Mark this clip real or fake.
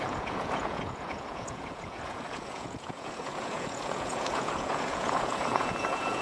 fake